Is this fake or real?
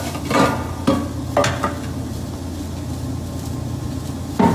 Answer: real